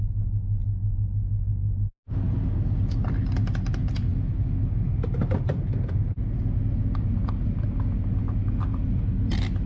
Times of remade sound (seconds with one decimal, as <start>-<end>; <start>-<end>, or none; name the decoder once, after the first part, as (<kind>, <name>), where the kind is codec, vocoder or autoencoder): none